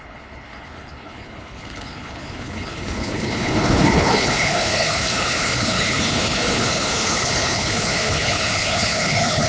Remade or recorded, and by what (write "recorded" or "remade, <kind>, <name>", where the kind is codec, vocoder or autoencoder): remade, codec, HILCodec